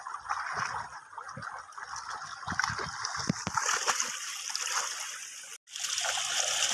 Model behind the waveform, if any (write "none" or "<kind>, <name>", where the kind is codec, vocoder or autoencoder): none